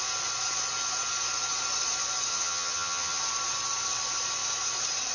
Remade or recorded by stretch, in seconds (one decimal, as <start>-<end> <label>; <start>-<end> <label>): 0.0-2.3 recorded; 2.3-3.2 remade; 3.2-5.1 recorded